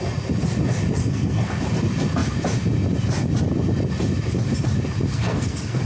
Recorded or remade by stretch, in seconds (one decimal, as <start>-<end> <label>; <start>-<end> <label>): 0.0-1.0 recorded; 1.0-1.6 remade; 1.6-5.1 recorded; 5.1-5.8 remade